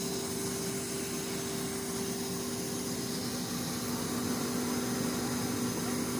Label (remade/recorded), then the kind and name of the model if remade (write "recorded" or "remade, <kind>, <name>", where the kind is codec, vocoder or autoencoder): recorded